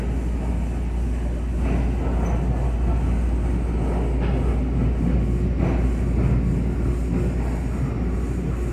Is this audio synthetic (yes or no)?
no